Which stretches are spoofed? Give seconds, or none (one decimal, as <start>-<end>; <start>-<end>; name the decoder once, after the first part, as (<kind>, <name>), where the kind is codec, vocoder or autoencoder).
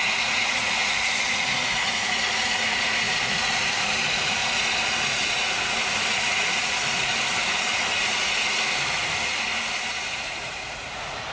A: 0.0-4.4 (vocoder, Vocos); 5.1-6.8; 9.9-11.3